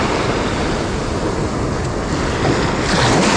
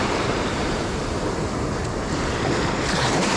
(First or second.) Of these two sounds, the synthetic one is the second